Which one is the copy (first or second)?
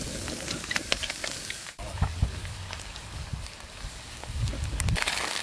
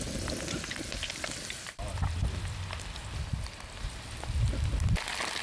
first